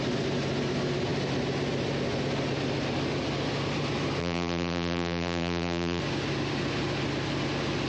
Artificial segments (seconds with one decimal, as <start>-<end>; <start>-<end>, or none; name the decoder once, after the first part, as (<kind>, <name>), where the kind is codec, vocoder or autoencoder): 4.2-6.0 (vocoder, BigVGAN v2)